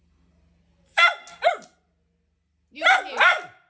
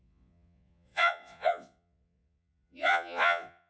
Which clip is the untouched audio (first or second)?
first